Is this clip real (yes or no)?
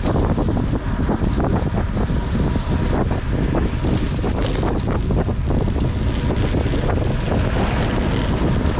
yes